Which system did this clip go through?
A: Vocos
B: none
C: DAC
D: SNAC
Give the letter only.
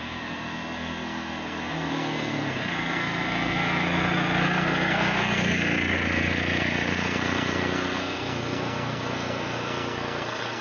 D